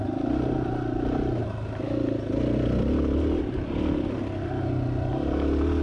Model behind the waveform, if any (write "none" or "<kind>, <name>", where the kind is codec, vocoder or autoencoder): none